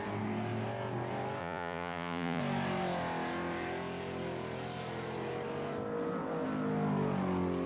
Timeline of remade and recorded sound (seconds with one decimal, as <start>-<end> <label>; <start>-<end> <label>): 0.0-1.4 recorded; 1.4-2.4 remade; 2.4-7.7 recorded